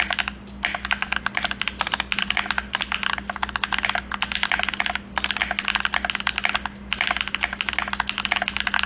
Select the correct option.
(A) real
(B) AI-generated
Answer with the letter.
A